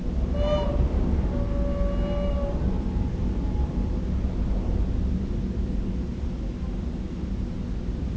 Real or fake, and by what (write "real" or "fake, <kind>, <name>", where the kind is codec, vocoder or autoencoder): real